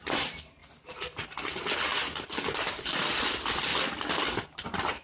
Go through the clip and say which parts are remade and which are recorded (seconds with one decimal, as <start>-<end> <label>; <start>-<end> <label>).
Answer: 0.0-0.6 remade; 0.6-2.1 recorded; 2.1-3.7 remade; 3.7-4.4 recorded; 4.4-5.0 remade